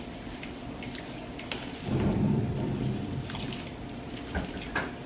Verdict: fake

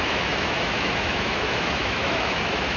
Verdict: fake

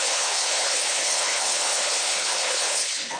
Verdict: fake